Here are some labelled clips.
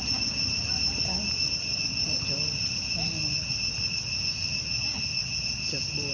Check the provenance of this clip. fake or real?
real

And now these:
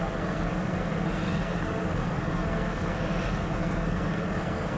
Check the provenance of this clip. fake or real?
fake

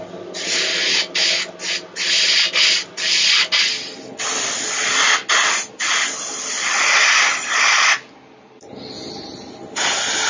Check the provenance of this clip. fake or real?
real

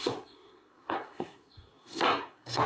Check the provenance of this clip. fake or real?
fake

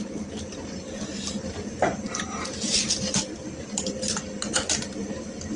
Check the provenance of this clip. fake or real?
real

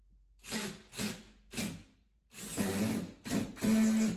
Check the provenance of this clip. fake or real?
real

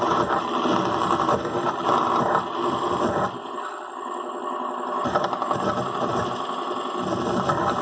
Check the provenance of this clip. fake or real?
real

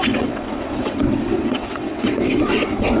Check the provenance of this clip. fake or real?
fake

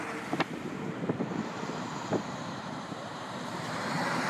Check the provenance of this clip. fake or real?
fake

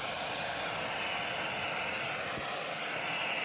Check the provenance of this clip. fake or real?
real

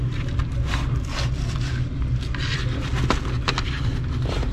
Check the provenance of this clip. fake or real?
real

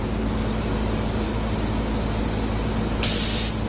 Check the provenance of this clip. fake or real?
real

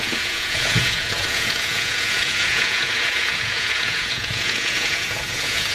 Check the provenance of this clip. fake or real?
fake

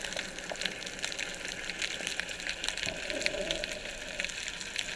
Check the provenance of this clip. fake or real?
real